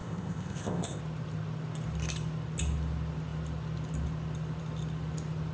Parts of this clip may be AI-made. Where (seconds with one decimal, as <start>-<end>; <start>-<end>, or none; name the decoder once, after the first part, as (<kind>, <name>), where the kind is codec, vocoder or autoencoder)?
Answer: 0.0-1.0 (codec, ZipCodec)